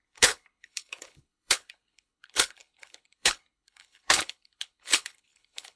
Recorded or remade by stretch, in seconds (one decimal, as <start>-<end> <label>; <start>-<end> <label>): 0.0-5.8 remade